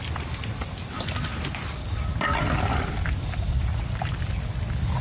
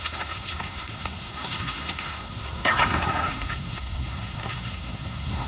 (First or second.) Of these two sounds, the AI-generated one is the second